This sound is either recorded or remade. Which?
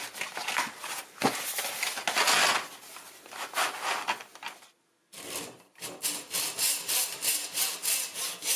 recorded